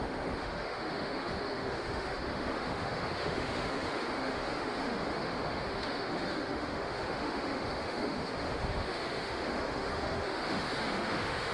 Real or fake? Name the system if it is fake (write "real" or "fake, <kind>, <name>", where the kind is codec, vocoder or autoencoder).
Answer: fake, autoencoder, DAC-VAE